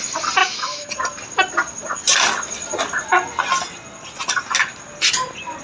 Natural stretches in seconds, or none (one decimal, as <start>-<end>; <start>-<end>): 0.0-0.4; 0.9-5.6